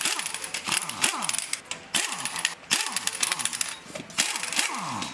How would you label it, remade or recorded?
recorded